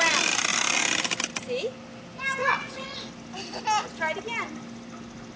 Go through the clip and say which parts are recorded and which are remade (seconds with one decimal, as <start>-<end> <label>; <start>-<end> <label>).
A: 0.0-2.4 recorded; 2.4-3.1 remade; 3.1-5.4 recorded